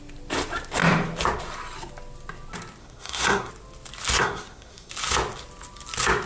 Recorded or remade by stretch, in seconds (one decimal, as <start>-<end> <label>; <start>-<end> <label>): 0.0-2.8 recorded; 2.8-3.5 remade; 3.5-4.2 recorded; 4.2-4.9 remade; 4.9-6.3 recorded